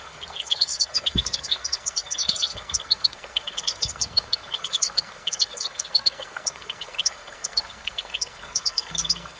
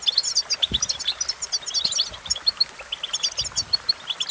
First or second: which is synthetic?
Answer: first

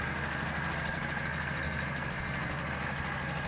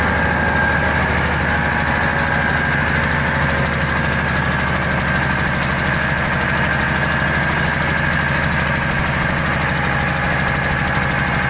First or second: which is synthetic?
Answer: first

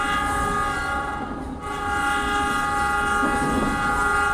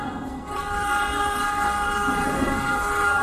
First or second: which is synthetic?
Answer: second